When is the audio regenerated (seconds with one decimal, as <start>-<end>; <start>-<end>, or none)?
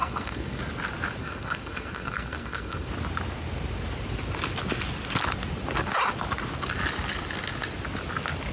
0.0-0.6; 1.2-2.9